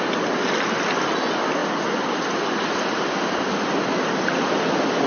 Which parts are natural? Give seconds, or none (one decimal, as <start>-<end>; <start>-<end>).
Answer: 0.0-5.1